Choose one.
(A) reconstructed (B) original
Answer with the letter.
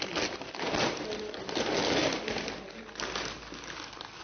B